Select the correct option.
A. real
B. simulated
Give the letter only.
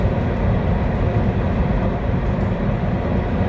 A